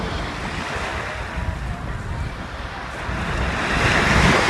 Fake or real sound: real